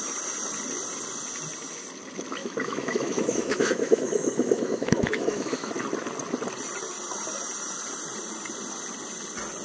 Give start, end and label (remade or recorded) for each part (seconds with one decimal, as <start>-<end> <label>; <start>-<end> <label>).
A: 0.0-2.4 recorded; 2.4-5.7 remade; 5.7-9.6 recorded